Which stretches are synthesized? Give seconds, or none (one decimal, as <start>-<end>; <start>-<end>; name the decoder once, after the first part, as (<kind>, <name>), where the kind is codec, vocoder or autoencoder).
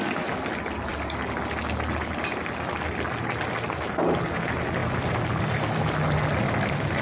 none